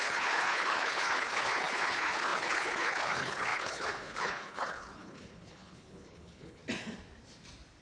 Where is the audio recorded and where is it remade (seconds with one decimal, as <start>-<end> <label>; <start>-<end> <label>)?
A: 0.0-6.6 remade; 6.6-7.8 recorded